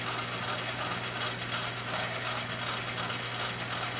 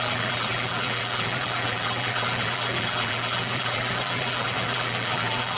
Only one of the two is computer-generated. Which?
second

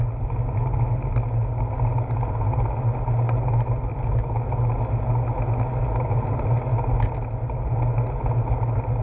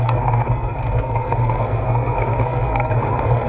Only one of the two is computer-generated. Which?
second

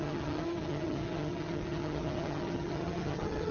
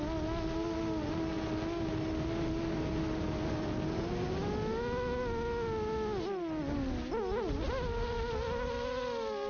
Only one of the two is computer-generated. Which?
first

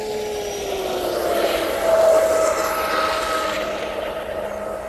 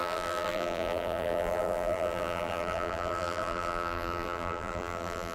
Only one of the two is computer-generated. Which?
second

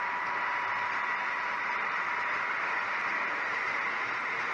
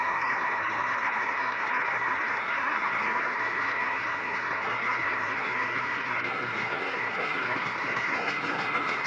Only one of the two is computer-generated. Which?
second